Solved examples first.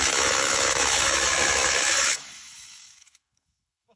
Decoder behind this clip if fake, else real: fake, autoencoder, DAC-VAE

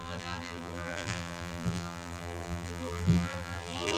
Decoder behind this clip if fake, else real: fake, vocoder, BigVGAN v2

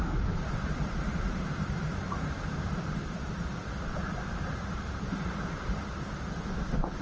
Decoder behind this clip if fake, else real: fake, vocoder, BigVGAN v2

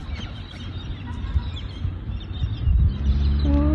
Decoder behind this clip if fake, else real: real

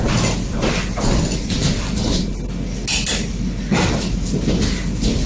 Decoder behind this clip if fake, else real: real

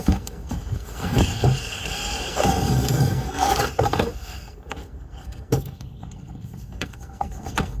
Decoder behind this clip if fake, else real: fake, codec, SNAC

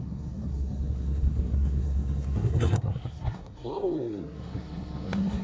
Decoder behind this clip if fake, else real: fake, codec, SNAC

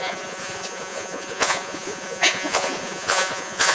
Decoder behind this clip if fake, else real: fake, vocoder, Vocos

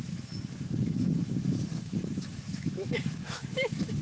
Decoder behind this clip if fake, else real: fake, autoencoder, DAC-VAE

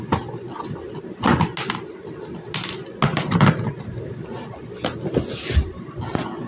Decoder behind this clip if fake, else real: real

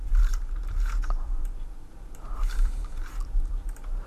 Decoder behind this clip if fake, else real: fake, vocoder, BigVGAN v2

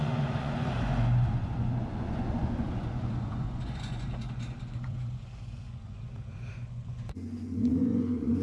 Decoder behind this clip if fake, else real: fake, vocoder, Vocos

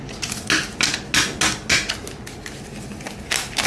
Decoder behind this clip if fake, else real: real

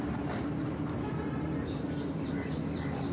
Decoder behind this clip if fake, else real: real